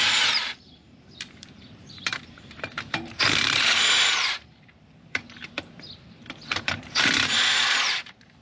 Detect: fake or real fake